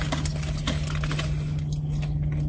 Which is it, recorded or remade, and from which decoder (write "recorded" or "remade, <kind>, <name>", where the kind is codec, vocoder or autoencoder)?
recorded